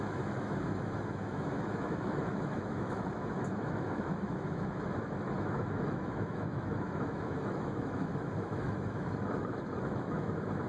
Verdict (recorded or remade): remade